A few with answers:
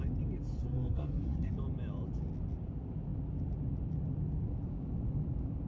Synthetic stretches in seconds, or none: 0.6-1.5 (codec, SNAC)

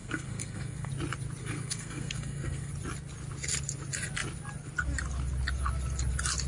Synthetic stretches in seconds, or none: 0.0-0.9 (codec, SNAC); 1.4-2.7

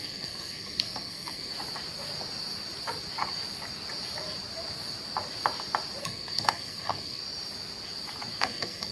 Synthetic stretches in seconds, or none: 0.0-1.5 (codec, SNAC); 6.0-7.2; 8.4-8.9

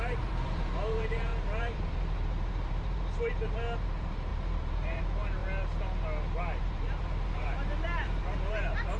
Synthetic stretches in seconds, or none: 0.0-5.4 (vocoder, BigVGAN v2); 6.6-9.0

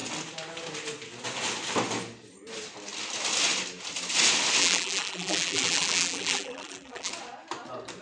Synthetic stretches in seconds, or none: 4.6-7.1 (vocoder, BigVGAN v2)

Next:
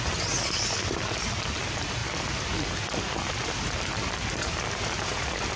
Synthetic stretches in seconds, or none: none